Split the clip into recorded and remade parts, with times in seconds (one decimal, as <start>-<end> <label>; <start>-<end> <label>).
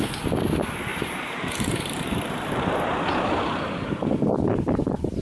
0.0-0.9 recorded; 0.9-4.0 remade; 4.0-5.2 recorded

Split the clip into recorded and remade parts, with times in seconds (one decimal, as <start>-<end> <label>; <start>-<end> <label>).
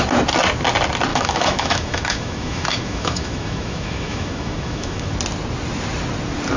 0.0-1.1 recorded; 1.1-5.1 remade; 5.1-6.6 recorded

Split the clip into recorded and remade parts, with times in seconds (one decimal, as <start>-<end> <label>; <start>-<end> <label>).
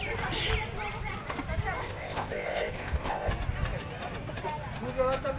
0.0-1.8 recorded; 1.8-3.3 remade; 3.3-5.4 recorded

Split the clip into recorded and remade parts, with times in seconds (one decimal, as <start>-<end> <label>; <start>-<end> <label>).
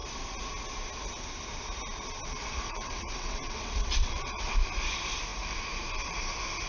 0.0-2.4 recorded; 2.4-4.5 remade; 4.5-6.7 recorded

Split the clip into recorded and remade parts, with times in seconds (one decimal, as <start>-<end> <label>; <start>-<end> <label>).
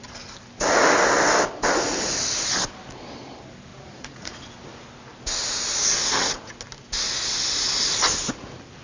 0.0-3.7 recorded; 3.7-4.4 remade; 4.4-8.8 recorded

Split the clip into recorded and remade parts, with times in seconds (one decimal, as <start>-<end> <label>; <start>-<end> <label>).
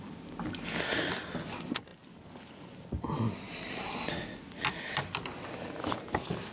0.0-6.5 recorded